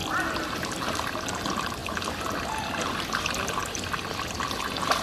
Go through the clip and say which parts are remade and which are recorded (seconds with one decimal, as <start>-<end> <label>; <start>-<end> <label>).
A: 0.0-5.0 recorded